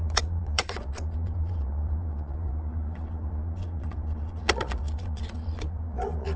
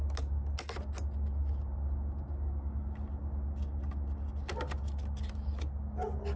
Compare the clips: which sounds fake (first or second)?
first